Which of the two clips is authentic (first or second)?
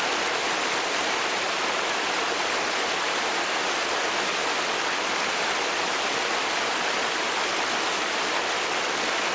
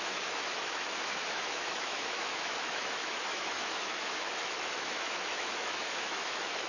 first